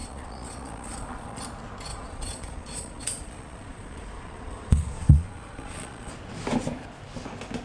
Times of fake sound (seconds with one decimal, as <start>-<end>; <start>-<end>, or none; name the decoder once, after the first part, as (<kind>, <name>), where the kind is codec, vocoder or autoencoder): 0.0-1.4 (vocoder, Vocos); 1.9-6.1

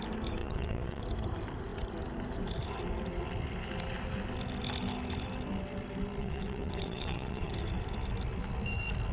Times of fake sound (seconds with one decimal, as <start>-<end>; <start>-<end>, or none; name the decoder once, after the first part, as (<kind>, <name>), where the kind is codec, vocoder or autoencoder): 0.4-1.0 (vocoder, WaveNeXt); 6.2-7.5